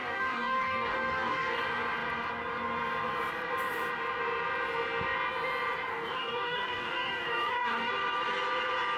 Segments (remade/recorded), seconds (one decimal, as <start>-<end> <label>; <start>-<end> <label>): 0.0-1.6 remade; 1.6-5.9 recorded; 5.9-7.9 remade; 7.9-9.0 recorded